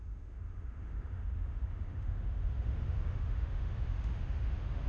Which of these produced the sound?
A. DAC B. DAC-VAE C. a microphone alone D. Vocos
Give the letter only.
B